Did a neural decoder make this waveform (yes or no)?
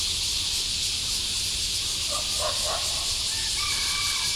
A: no